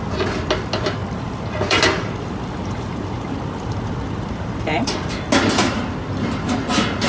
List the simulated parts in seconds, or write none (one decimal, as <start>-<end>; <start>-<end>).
1.0-5.2